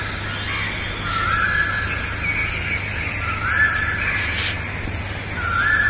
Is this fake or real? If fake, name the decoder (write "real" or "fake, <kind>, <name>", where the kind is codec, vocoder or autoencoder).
real